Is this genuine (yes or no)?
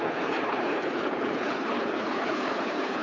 no